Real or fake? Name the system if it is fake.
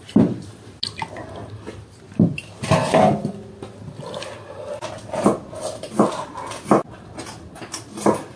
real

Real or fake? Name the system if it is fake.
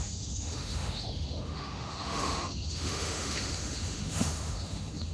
fake, autoencoder, DAC-VAE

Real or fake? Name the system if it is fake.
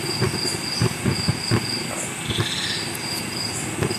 real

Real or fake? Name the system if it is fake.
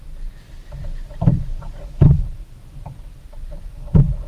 real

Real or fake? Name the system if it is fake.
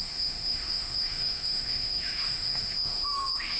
fake, autoencoder, DAC-VAE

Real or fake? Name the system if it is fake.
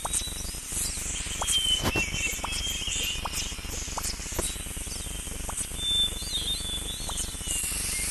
real